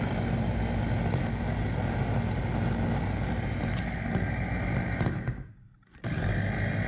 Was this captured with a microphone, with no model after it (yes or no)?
yes